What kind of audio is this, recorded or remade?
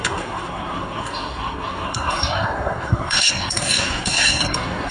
remade